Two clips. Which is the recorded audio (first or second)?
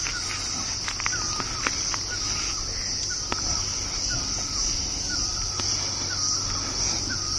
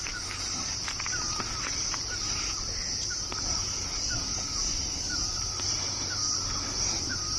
first